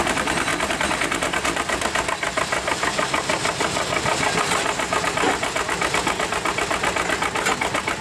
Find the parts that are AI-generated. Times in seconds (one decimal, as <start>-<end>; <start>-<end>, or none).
none